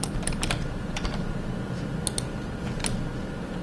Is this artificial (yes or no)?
no